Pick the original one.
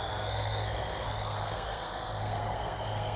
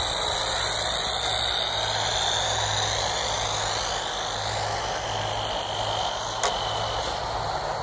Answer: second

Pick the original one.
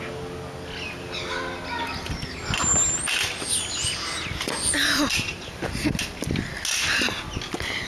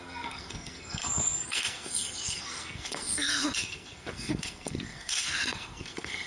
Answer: first